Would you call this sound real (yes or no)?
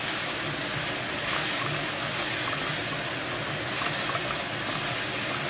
yes